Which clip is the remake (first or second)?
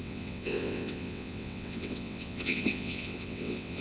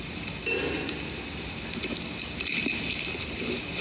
first